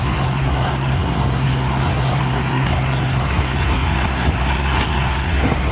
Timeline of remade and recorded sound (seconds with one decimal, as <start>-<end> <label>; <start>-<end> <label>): 0.0-5.7 remade